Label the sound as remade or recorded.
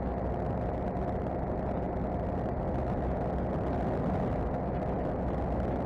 recorded